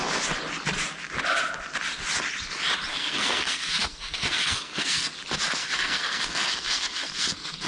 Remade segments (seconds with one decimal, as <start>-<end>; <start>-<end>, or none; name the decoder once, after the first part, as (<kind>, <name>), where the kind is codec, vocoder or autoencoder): 2.9-5.1 (codec, SNAC); 5.6-7.7